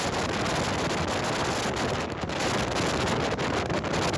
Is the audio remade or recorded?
recorded